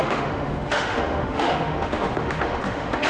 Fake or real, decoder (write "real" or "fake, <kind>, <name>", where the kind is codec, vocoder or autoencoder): fake, autoencoder, DAC-VAE